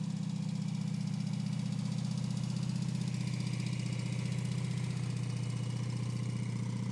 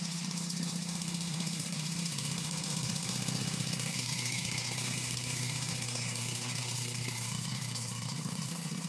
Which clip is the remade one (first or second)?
second